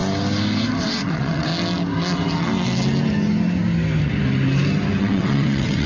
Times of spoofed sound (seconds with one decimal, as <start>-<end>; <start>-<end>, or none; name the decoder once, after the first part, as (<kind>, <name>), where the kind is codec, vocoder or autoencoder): 0.8-1.5 (vocoder, WaveNeXt); 5.0-5.9